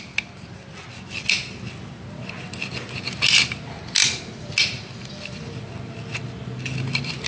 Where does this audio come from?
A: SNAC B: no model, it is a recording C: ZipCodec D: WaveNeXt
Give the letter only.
B